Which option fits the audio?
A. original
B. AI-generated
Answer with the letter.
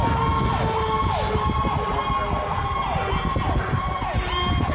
A